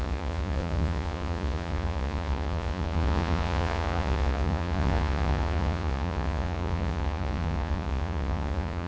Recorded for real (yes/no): no